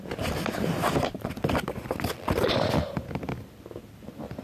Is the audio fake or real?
real